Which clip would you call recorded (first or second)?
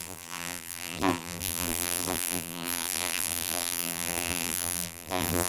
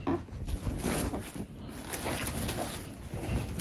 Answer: second